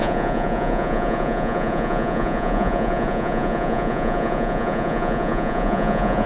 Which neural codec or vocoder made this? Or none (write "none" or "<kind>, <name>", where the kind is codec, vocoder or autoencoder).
vocoder, Vocos